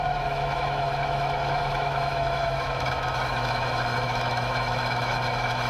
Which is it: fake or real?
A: fake